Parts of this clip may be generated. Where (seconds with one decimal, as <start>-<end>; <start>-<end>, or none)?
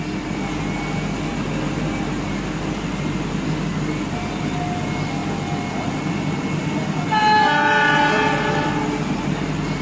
none